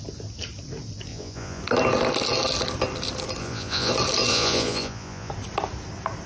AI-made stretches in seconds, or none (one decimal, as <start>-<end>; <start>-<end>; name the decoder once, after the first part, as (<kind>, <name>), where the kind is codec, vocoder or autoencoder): 1.1-1.6 (vocoder, Vocos); 3.4-3.9; 4.3-5.3